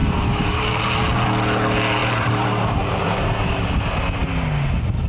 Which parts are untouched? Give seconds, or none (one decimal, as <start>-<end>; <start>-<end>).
0.8-2.0; 3.4-5.1